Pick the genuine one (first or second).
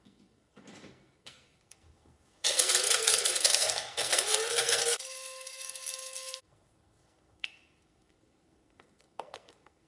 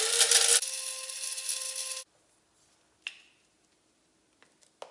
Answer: second